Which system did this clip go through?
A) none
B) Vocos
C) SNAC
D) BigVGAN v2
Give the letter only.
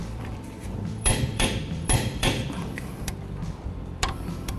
D